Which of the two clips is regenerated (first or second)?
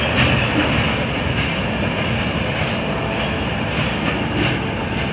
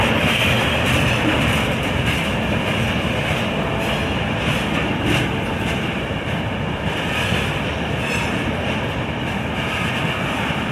second